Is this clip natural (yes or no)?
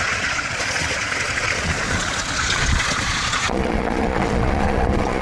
no